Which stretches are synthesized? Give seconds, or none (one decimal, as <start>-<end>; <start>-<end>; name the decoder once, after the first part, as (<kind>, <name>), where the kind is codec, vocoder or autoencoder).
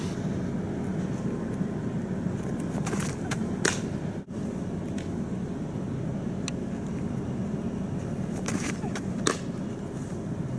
0.9-5.9 (vocoder, BigVGAN v2); 7.4-9.5